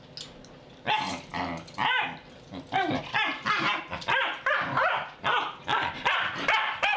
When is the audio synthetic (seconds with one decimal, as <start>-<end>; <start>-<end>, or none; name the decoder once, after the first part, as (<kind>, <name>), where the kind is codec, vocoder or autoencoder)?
3.3-4.8 (vocoder, BigVGAN v2)